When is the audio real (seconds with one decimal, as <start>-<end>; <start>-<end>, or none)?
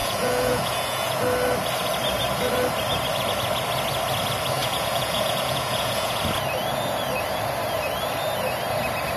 1.2-4.6; 6.2-9.2